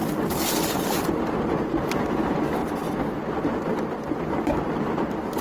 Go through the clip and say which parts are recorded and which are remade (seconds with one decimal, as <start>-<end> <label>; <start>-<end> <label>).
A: 0.0-0.7 recorded; 0.7-2.6 remade; 2.6-4.6 recorded; 4.6-5.4 remade